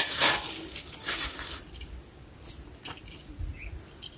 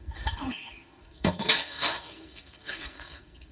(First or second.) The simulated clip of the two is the second